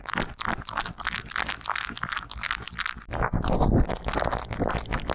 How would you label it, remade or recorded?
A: recorded